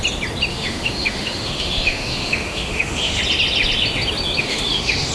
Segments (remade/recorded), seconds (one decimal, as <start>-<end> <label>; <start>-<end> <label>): 0.0-0.5 recorded; 0.5-3.2 remade; 3.2-4.4 recorded; 4.4-5.1 remade